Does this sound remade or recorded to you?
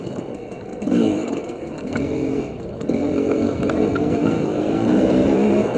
remade